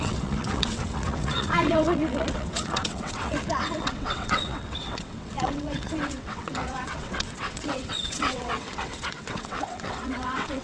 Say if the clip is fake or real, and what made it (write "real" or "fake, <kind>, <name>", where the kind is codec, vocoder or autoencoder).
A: fake, vocoder, WaveNeXt